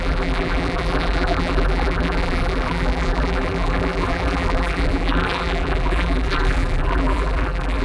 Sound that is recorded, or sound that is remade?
remade